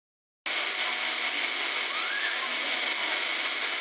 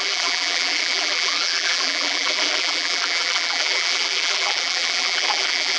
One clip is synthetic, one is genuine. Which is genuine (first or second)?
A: first